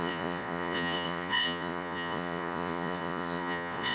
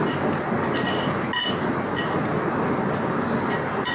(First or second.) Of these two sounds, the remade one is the first